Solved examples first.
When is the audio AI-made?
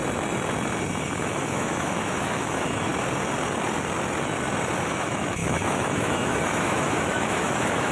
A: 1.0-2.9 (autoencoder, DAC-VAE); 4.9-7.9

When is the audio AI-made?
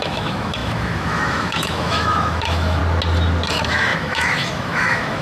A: 0.0-2.8 (autoencoder, DAC-VAE); 3.5-5.2